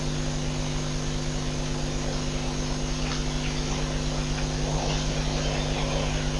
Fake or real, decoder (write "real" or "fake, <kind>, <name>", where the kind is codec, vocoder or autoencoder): real